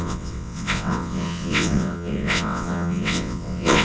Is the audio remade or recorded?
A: remade